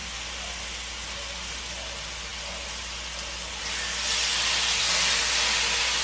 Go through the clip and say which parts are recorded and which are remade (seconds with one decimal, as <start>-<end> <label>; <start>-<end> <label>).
0.0-6.0 recorded